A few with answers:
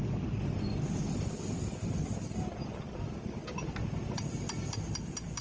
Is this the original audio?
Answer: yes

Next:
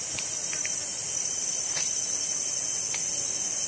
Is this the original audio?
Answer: yes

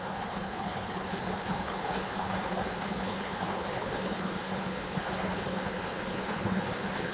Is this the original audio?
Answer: no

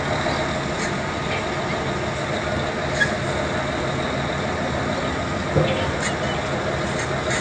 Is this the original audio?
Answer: yes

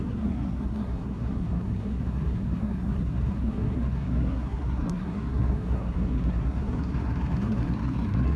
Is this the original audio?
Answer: no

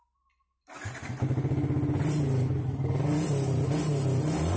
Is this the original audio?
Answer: yes